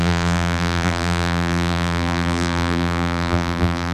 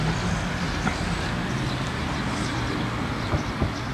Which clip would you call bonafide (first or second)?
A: second